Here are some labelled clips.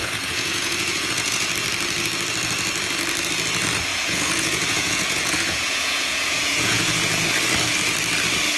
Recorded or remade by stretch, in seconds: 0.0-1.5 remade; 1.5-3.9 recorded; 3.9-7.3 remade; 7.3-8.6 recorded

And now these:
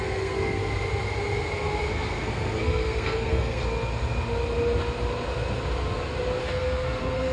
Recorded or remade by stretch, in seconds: 0.0-0.6 remade; 0.6-1.9 recorded; 1.9-3.6 remade; 3.6-6.4 recorded; 6.4-7.3 remade